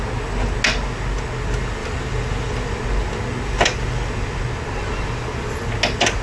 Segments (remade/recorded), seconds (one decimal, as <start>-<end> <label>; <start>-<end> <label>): 0.0-6.2 recorded